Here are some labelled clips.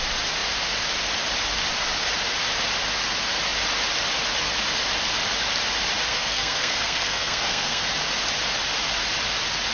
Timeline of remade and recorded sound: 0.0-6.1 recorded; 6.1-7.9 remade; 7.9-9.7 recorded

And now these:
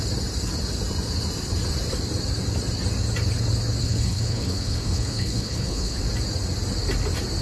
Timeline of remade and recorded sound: 0.0-3.8 recorded; 3.8-6.0 remade; 6.0-7.4 recorded

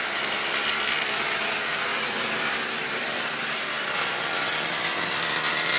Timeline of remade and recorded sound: 0.0-5.8 recorded